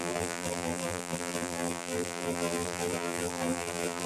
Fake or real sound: fake